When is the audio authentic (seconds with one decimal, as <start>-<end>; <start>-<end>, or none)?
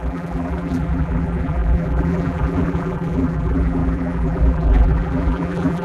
none